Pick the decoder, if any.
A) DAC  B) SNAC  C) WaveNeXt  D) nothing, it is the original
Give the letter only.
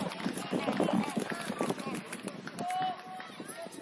D